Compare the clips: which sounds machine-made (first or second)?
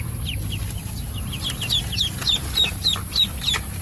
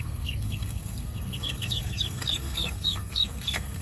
second